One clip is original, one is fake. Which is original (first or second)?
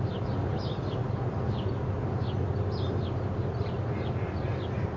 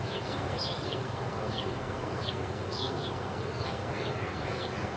first